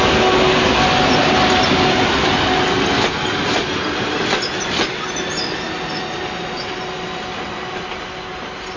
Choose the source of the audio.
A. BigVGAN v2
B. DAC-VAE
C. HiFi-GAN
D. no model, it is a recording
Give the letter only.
D